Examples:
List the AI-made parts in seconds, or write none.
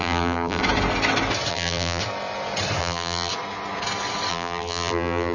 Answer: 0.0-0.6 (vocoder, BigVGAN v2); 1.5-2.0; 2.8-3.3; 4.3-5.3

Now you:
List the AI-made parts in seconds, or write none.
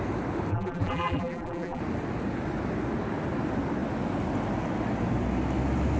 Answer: 0.5-1.8 (vocoder, BigVGAN v2)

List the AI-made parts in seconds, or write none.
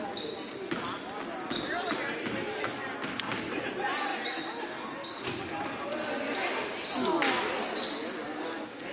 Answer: none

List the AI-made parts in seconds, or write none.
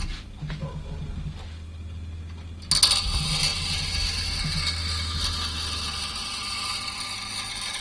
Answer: none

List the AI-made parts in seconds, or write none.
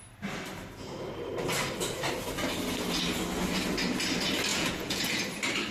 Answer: 4.5-5.2 (vocoder, Vocos)